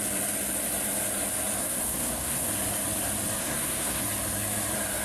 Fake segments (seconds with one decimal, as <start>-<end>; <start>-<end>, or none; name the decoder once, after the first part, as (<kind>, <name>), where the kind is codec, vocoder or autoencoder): 1.6-2.5 (codec, SNAC); 3.4-4.0

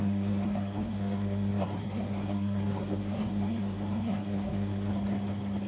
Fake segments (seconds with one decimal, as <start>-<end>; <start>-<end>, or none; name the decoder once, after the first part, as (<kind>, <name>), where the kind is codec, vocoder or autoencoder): 0.0-4.9 (codec, SNAC)

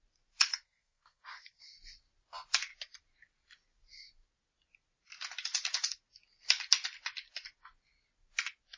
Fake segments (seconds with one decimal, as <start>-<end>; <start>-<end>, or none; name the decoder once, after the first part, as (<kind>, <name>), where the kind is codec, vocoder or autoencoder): 0.5-1.6 (codec, SNAC)